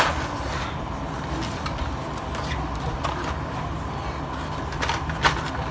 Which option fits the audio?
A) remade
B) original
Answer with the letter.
B